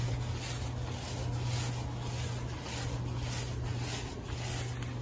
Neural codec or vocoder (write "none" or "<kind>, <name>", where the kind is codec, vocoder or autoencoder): none